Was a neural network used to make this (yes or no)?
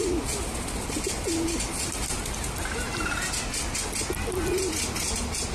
no